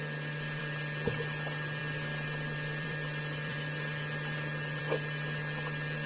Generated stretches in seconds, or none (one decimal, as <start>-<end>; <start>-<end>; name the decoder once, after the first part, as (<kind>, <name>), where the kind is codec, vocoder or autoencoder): 0.0-0.6 (vocoder, BigVGAN v2); 1.8-4.8